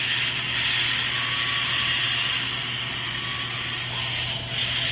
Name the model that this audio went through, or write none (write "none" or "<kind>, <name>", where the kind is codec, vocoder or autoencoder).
none